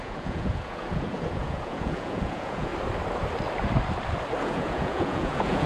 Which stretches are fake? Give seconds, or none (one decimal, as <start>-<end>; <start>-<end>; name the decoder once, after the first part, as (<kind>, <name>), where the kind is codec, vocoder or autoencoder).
0.0-2.7 (vocoder, Vocos); 4.4-5.7